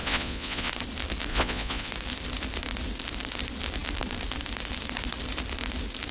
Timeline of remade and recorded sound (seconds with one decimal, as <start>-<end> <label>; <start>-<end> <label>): 0.0-0.7 remade; 0.7-1.3 recorded; 1.3-1.9 remade; 1.9-6.1 recorded